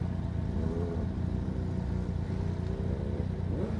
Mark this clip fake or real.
real